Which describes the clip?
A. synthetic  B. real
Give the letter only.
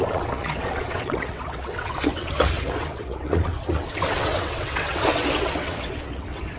A